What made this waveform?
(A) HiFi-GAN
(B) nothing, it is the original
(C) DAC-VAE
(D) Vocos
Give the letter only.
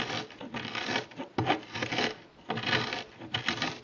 B